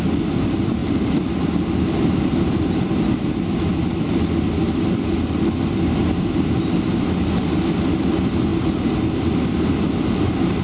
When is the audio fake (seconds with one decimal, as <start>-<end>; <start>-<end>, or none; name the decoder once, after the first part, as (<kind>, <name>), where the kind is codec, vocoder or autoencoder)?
0.8-1.6 (vocoder, BigVGAN v2)